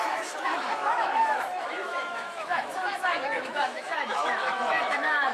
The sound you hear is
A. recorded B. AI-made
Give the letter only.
B